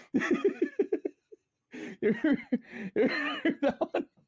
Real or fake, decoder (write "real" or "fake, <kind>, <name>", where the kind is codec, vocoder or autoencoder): real